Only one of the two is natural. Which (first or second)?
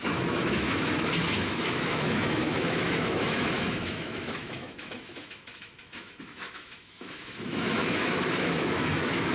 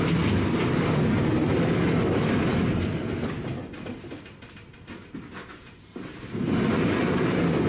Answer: second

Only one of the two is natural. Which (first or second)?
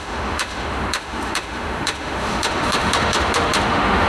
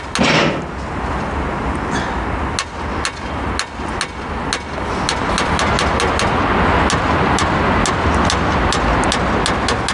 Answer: second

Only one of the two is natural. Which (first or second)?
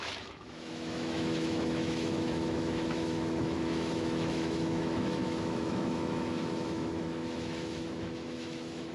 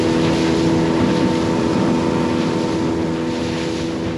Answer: second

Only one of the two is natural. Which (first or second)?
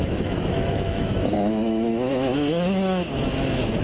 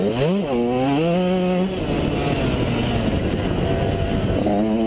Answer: second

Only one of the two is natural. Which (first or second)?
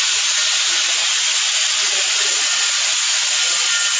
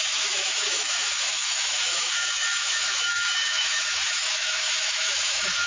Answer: first